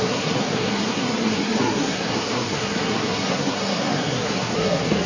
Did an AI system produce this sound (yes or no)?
yes